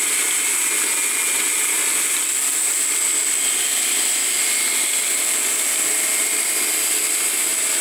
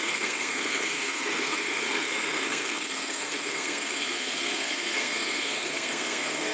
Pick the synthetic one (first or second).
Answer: second